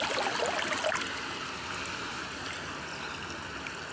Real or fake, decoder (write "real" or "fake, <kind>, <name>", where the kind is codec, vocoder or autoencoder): real